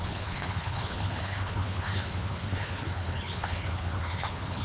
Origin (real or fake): fake